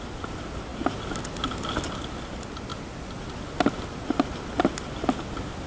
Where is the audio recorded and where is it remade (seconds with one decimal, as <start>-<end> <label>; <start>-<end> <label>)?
0.0-5.7 recorded